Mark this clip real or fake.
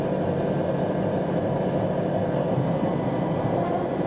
fake